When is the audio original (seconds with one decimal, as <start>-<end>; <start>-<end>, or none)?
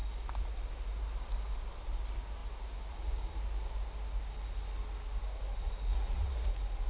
0.0-5.9; 6.5-6.9